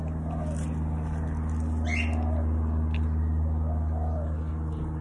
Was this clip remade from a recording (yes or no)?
no